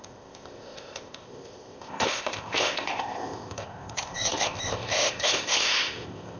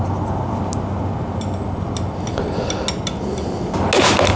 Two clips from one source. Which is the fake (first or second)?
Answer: first